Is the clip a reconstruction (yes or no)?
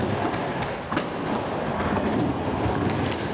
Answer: no